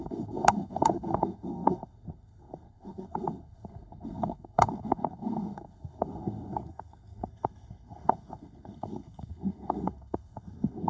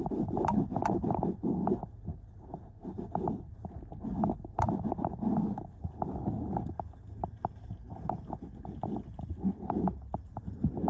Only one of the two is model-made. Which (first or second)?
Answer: first